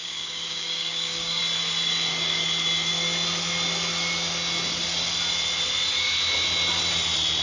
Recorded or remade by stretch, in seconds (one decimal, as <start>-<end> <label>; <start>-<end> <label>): 0.0-1.4 remade; 1.4-7.4 recorded